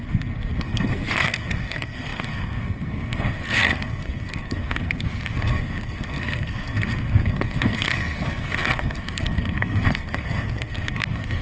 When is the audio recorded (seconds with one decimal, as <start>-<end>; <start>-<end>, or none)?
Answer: none